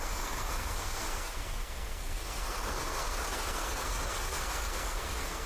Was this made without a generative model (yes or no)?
no